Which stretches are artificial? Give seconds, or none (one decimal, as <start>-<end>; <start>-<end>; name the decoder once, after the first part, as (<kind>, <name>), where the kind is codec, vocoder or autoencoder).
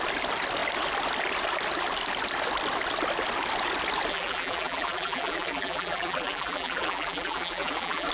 4.1-8.1 (vocoder, BigVGAN v2)